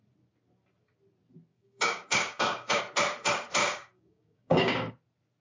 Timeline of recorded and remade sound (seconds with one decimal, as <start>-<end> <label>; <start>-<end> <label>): 0.0-1.5 recorded; 1.5-2.8 remade; 2.8-3.6 recorded; 3.6-4.9 remade; 4.9-5.4 recorded